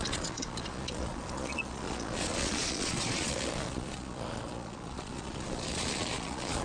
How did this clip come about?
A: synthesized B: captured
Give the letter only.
A